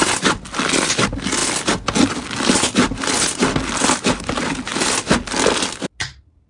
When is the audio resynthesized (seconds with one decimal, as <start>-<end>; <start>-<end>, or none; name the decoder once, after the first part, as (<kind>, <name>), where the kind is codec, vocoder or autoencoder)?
none